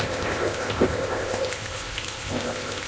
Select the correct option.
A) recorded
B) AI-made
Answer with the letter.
B